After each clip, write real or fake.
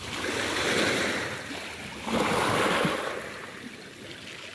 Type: real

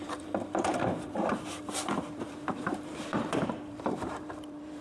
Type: fake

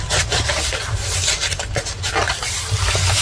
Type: real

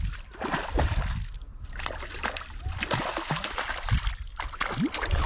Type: real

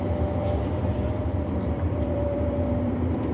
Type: fake